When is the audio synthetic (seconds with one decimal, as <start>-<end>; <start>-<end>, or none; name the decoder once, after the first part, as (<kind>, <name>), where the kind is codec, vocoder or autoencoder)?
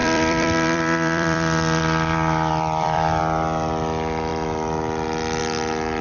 0.0-3.2 (vocoder, BigVGAN v2)